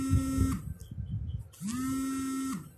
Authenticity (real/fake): real